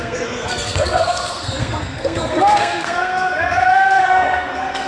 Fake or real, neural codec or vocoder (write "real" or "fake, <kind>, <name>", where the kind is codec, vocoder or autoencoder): fake, codec, SNAC